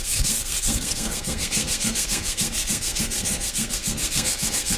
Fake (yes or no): yes